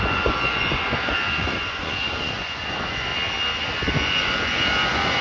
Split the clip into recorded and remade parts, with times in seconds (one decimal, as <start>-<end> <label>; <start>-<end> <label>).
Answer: 0.0-3.1 remade; 3.1-3.9 recorded; 3.9-5.2 remade

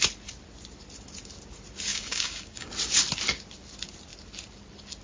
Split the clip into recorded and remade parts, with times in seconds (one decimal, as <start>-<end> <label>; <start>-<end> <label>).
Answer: 0.0-1.9 recorded; 1.9-2.7 remade; 2.7-5.0 recorded

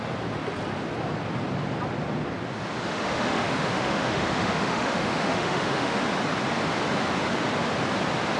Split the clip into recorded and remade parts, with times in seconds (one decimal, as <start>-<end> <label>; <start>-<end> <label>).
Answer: 0.0-2.9 recorded; 2.9-6.0 remade; 6.0-8.4 recorded

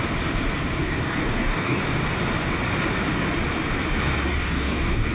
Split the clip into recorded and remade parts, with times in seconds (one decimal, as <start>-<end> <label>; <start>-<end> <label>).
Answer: 0.0-0.8 recorded; 0.8-1.8 remade; 1.8-4.3 recorded; 4.3-5.1 remade